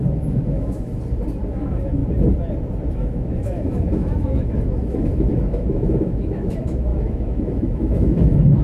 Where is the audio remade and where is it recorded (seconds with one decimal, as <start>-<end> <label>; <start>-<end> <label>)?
0.0-0.9 remade; 0.9-1.5 recorded; 1.5-2.0 remade; 2.0-2.9 recorded; 2.9-8.6 remade